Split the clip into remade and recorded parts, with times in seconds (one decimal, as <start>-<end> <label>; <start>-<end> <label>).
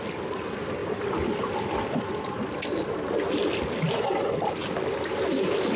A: 0.0-5.8 recorded